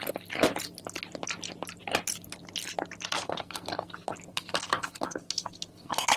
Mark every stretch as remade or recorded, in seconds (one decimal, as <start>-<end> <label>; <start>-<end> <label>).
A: 0.0-3.2 recorded; 3.2-3.9 remade; 3.9-4.3 recorded; 4.3-6.2 remade